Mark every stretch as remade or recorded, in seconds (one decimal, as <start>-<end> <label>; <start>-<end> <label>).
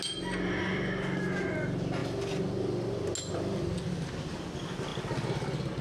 0.0-5.8 recorded